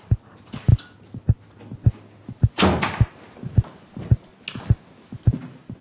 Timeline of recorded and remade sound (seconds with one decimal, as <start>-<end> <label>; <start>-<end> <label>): 0.0-0.7 remade; 0.7-3.8 recorded; 3.8-4.3 remade; 4.3-5.8 recorded